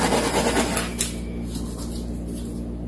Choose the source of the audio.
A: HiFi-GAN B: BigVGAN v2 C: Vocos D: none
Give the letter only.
D